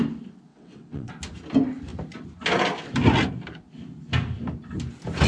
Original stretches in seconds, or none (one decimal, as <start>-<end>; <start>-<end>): 0.0-0.5; 1.1-5.3